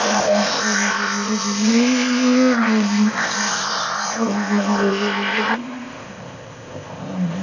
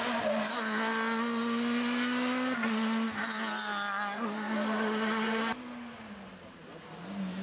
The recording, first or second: second